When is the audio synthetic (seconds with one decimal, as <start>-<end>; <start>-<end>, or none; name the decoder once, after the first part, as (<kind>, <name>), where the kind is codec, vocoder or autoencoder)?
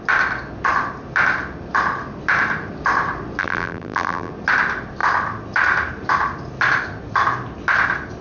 3.4-4.3 (vocoder, BigVGAN v2)